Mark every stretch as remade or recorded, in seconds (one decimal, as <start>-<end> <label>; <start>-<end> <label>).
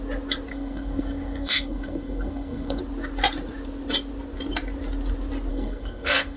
0.0-0.5 recorded; 0.5-2.8 remade; 2.8-5.5 recorded; 5.5-6.4 remade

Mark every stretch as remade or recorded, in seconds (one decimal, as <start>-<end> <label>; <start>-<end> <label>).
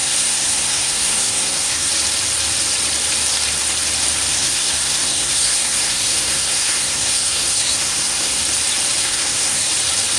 0.0-1.9 remade; 1.9-4.3 recorded; 4.3-8.4 remade; 8.4-9.0 recorded; 9.0-9.7 remade; 9.7-10.2 recorded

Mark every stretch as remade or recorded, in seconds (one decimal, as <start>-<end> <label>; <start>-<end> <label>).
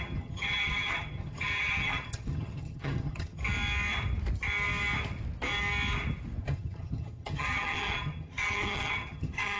0.0-3.4 remade; 3.4-6.4 recorded; 6.4-9.6 remade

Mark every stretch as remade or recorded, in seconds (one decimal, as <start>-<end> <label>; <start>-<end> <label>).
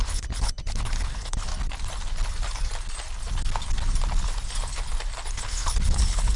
0.0-1.5 remade; 1.5-5.3 recorded; 5.3-6.4 remade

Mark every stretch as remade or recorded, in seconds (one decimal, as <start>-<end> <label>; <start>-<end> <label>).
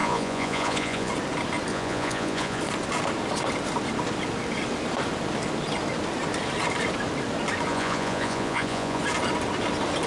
0.0-1.1 remade; 1.1-1.7 recorded; 1.7-2.6 remade; 2.6-7.7 recorded; 7.7-9.0 remade; 9.0-10.1 recorded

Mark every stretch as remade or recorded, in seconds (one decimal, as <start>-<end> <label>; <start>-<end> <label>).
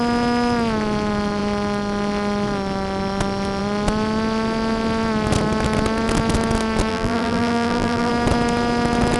0.0-6.9 recorded; 6.9-8.1 remade; 8.1-9.2 recorded